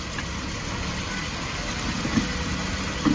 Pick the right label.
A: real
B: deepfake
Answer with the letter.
A